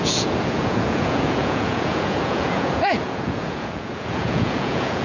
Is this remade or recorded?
remade